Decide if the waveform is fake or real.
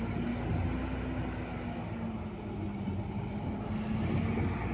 real